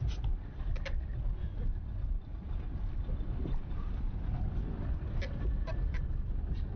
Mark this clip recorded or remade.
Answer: recorded